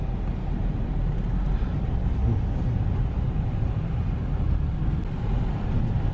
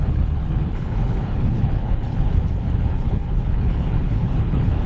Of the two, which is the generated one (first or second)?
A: second